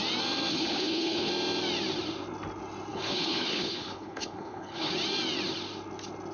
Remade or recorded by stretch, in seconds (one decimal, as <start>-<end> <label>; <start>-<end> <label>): 0.0-0.5 recorded; 0.5-1.3 remade; 1.3-2.9 recorded; 2.9-4.9 remade; 4.9-6.3 recorded